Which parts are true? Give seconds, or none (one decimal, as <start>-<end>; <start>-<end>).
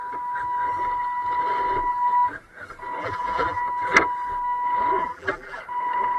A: 0.0-3.0; 3.6-5.0; 5.6-6.2